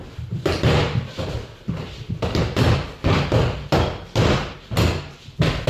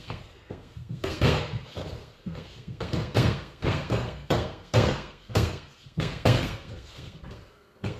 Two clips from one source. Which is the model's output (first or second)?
second